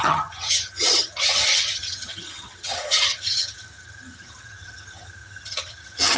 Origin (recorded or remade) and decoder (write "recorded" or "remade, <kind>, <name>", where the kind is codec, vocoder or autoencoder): remade, vocoder, HiFi-GAN